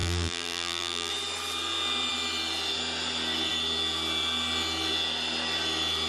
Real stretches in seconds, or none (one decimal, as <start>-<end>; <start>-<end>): 1.1-6.1

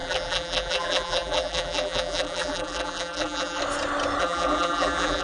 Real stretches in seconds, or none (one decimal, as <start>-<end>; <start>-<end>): 3.6-4.2